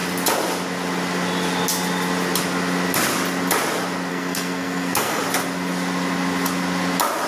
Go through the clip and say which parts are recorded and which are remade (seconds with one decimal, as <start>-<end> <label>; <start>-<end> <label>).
0.0-4.1 recorded; 4.1-5.2 remade; 5.2-7.3 recorded